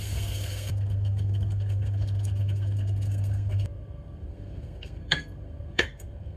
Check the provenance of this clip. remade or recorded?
remade